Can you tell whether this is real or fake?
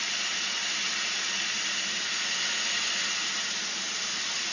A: real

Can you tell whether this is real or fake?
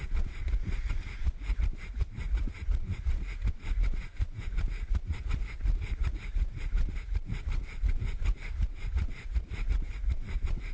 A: fake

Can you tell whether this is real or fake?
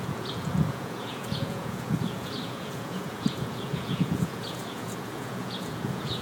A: fake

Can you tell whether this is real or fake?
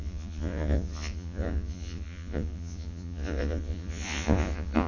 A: fake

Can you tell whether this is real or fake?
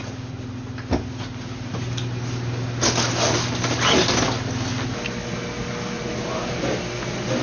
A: real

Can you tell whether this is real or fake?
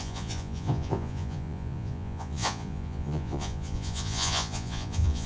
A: fake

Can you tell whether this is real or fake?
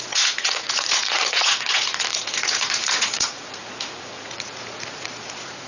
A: fake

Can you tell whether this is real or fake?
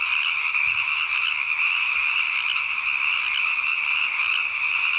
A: real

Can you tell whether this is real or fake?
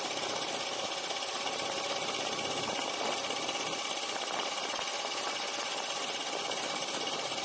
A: real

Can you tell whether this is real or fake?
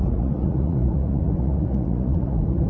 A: fake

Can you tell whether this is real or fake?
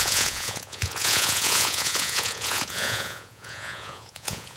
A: fake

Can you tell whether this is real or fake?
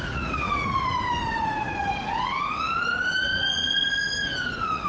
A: fake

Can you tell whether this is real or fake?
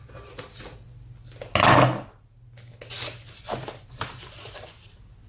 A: real